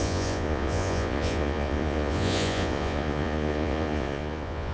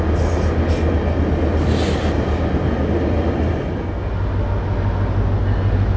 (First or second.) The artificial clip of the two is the first